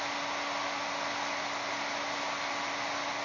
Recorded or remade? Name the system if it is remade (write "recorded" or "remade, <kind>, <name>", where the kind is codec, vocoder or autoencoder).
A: recorded